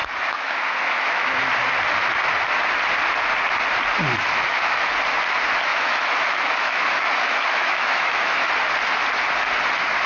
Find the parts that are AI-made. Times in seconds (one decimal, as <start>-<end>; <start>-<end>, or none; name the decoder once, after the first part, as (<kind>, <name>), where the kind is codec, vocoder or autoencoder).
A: 0.0-1.4 (autoencoder, DAC-VAE); 4.2-4.9; 5.7-8.5

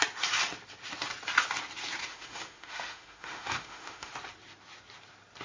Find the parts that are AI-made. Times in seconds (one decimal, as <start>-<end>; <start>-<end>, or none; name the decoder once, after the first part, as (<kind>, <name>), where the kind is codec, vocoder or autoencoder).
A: 2.0-4.1 (autoencoder, DAC-VAE)

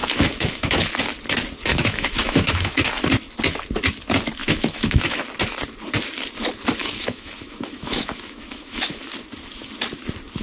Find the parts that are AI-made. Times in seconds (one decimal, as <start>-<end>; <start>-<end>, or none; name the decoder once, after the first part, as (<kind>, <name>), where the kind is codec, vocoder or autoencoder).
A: 0.0-0.9 (autoencoder, DAC-VAE); 1.7-2.9; 4.4-5.2; 6.8-9.0

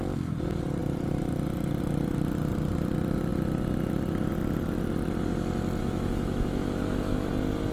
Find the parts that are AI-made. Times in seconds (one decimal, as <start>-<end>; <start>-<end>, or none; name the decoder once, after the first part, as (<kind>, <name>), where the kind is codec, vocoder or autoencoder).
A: 5.8-7.3 (autoencoder, DAC-VAE)

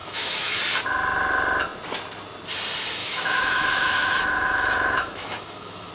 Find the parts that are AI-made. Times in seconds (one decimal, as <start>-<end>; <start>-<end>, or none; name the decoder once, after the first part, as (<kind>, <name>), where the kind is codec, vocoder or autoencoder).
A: 0.0-0.6 (autoencoder, DAC-VAE); 3.0-5.9

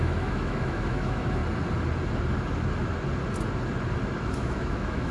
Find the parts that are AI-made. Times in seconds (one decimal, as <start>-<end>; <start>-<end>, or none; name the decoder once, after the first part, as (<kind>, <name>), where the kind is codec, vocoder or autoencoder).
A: 0.0-1.4 (autoencoder, DAC-VAE); 4.2-5.1

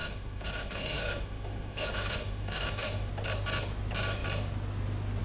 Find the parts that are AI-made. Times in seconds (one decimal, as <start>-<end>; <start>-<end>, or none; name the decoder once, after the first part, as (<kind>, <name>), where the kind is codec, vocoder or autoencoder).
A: 0.0-3.1 (autoencoder, DAC-VAE)

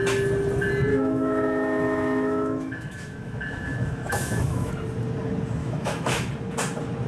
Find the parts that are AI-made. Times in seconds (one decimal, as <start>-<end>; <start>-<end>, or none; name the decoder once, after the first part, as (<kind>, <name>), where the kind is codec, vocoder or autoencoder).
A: 0.9-4.7 (autoencoder, DAC-VAE); 5.6-6.3